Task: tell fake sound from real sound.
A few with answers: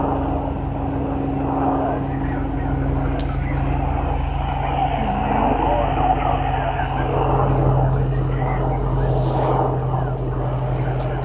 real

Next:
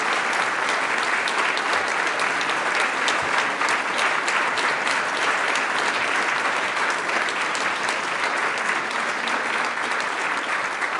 real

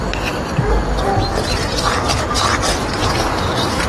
real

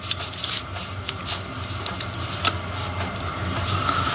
real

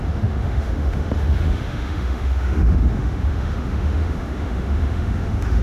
fake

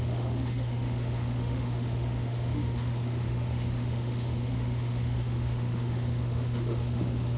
fake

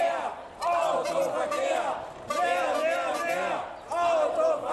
real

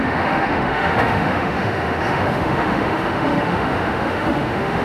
fake